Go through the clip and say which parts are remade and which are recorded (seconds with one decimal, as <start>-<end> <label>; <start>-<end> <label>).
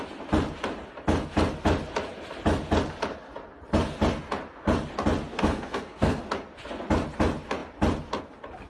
0.0-5.3 recorded; 5.3-6.2 remade; 6.2-8.7 recorded